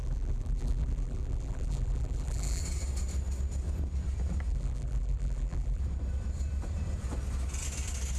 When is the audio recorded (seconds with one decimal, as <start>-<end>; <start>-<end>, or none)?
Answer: 2.6-4.5; 5.8-8.2